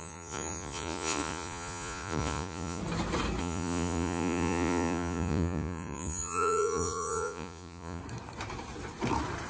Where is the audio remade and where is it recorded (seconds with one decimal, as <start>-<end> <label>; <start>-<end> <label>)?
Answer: 0.0-2.8 remade; 2.8-3.4 recorded; 3.4-8.0 remade; 8.0-9.5 recorded